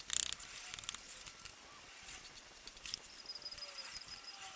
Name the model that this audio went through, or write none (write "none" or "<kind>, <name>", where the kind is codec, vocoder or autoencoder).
none